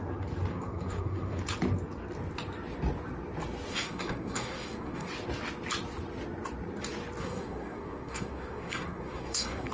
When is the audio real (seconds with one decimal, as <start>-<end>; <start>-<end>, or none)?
0.0-0.5; 1.4-3.7; 5.1-7.2